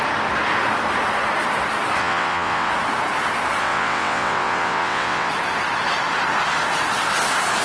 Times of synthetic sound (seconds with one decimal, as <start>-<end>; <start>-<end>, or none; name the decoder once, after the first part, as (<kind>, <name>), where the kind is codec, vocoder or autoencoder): 2.0-2.7 (vocoder, WaveNeXt); 3.6-5.3